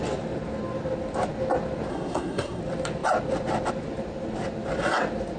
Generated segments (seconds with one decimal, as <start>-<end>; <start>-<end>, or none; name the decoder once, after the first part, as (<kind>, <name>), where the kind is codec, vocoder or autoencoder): 1.9-2.6 (codec, SNAC)